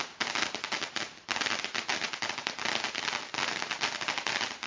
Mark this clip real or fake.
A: real